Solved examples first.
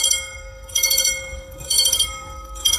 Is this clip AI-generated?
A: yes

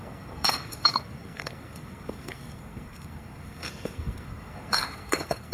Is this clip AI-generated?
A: yes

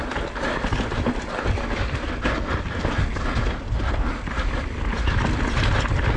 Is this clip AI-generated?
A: no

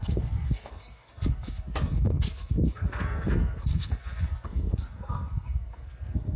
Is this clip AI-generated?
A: yes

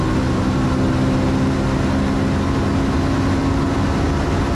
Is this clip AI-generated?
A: no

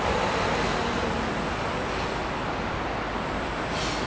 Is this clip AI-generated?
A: no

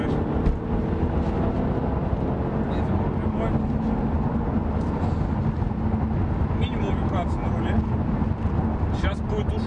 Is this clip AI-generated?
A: no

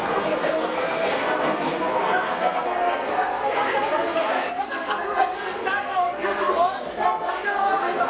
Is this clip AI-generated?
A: yes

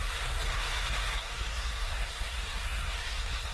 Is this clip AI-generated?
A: yes